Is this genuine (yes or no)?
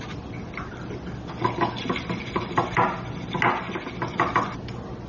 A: yes